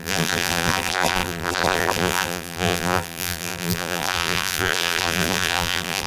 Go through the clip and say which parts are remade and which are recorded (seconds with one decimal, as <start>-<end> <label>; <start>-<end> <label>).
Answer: 0.0-6.1 remade